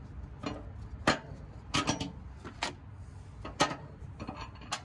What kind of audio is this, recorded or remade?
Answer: recorded